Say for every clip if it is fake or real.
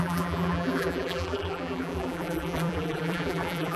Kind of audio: fake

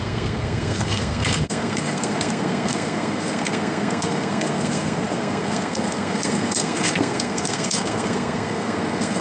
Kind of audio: fake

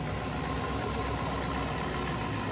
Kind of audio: real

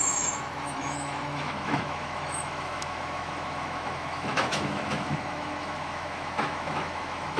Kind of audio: fake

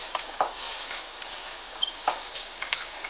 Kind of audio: fake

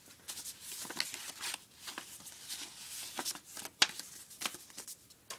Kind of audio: real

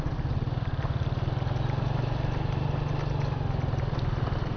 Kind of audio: real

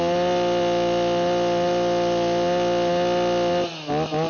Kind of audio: real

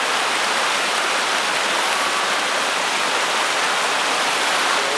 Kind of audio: real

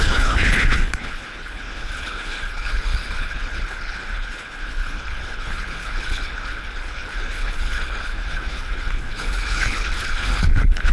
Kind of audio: fake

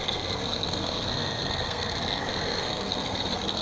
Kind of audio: fake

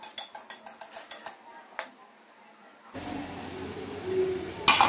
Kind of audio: real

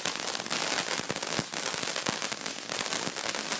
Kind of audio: real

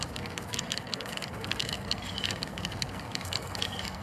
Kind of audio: fake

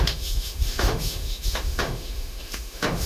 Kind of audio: fake